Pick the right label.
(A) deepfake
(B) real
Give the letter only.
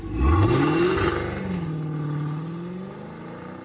B